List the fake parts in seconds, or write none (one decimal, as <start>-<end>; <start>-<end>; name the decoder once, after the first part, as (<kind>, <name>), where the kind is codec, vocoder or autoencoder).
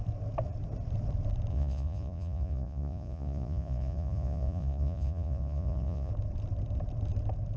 1.5-6.1 (vocoder, Vocos)